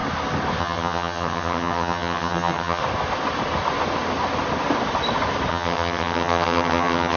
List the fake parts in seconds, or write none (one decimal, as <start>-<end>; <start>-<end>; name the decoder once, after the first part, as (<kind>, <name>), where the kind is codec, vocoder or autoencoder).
0.6-2.8 (vocoder, HiFi-GAN); 5.5-7.2